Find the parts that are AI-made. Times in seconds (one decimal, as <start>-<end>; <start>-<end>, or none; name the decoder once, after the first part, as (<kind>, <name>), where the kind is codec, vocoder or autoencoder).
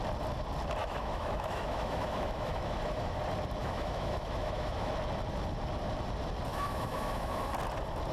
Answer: 0.8-3.2 (autoencoder, DAC-VAE); 3.6-4.9; 6.5-7.5